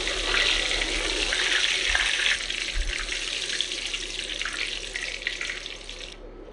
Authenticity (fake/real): real